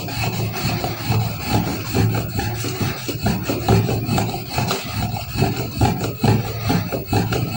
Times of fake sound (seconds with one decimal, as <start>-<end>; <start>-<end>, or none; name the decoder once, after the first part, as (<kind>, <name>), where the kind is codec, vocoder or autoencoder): none

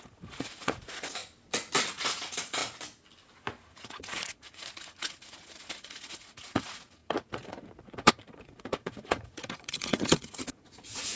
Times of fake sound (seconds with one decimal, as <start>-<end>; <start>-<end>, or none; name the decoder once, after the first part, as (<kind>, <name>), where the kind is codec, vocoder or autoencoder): 0.0-1.2 (vocoder, Vocos); 1.9-2.6; 3.6-11.2

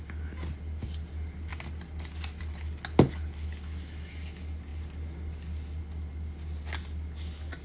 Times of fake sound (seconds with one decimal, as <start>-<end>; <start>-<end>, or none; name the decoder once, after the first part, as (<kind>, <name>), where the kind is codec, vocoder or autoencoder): none

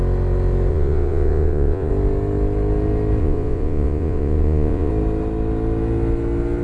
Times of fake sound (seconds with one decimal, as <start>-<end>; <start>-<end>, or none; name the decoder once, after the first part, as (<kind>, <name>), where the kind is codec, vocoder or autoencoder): 0.7-1.9 (vocoder, Vocos); 3.2-4.9

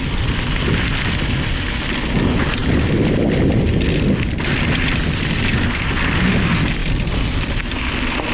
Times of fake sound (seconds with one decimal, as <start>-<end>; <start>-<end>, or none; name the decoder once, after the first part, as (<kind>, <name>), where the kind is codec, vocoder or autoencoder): none

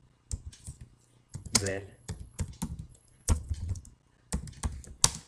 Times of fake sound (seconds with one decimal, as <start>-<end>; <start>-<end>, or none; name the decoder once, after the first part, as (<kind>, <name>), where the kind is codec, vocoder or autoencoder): 1.3-2.5 (vocoder, Vocos); 2.9-3.8

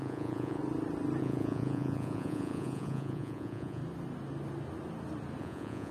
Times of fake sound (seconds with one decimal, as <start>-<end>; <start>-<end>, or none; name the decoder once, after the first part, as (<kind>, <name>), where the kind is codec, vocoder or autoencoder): 0.0-0.6 (vocoder, Vocos); 1.2-3.8; 5.4-5.9

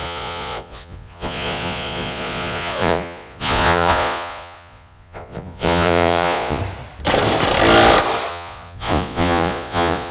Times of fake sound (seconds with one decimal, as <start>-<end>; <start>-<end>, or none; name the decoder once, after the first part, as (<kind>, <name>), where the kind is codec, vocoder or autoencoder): 0.0-6.6 (vocoder, Vocos); 8.3-10.1